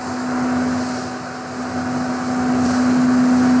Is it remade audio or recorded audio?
recorded